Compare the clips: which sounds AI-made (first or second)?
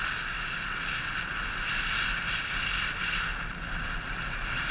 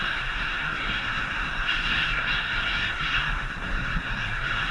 second